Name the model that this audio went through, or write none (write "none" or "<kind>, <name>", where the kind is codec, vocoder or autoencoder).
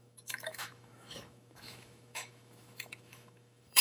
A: autoencoder, DAC-VAE